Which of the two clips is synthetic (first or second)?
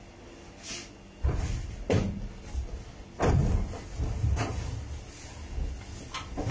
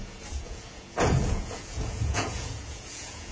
second